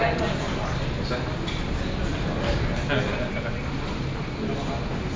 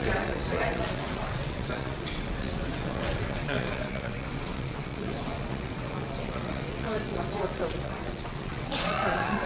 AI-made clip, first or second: second